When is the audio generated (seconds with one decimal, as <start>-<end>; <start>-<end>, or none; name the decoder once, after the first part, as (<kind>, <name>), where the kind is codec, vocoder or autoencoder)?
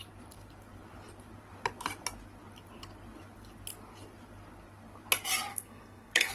5.5-6.3 (codec, SNAC)